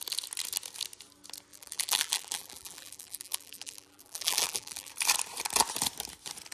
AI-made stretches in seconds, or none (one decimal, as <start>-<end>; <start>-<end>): 1.5-4.9